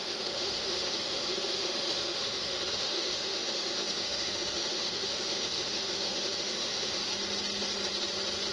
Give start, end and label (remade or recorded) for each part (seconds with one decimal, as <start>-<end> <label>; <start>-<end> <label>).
0.0-7.1 remade; 7.1-8.5 recorded